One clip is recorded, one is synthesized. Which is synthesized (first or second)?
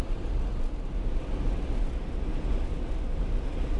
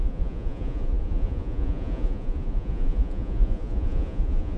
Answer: second